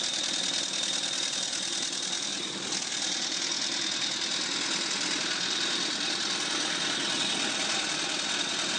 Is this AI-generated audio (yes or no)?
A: no